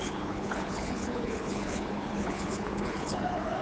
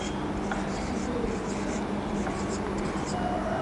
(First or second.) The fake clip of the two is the first